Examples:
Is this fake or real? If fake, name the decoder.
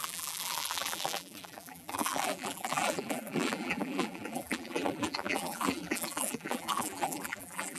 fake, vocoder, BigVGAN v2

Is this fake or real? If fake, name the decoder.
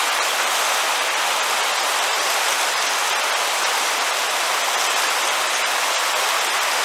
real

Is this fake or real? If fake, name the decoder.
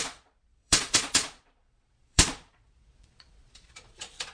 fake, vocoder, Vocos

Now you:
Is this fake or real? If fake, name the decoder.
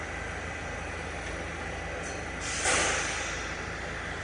real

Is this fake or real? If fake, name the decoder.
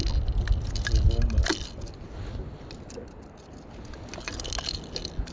real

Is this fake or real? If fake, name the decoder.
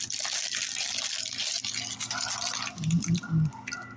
real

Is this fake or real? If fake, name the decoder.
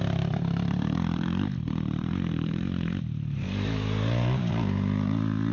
fake, vocoder, BigVGAN v2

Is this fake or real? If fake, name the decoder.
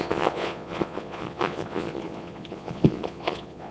fake, vocoder, Vocos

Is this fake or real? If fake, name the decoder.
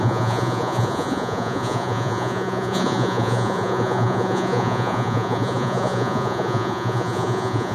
fake, vocoder, Vocos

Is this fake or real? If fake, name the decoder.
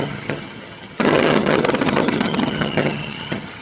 fake, vocoder, HiFi-GAN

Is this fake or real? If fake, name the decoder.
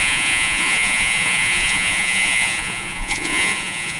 fake, vocoder, Vocos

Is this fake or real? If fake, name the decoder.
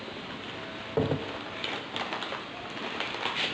real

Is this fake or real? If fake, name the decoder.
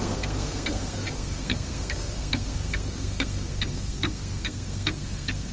fake, codec, SNAC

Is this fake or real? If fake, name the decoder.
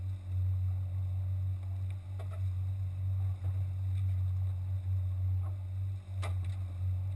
real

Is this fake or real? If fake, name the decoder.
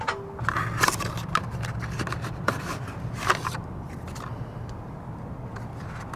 real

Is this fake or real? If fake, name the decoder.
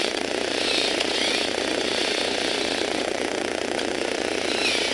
fake, vocoder, Vocos